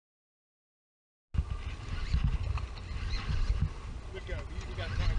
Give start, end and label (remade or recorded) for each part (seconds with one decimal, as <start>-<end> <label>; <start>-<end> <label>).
0.0-5.2 recorded